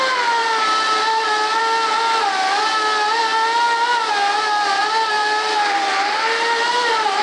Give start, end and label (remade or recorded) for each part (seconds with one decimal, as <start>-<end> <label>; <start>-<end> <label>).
0.0-0.4 recorded; 0.4-1.6 remade; 1.6-4.8 recorded; 4.8-7.2 remade